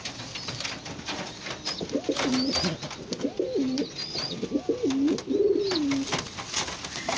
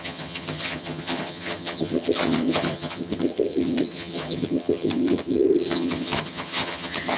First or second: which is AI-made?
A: second